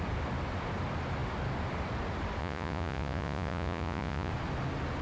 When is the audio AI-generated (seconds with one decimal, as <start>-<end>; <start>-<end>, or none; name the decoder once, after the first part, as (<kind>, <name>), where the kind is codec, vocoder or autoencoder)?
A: 2.4-4.3 (vocoder, Vocos)